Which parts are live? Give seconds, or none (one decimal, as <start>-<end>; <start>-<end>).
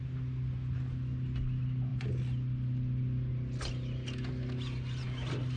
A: 0.0-5.6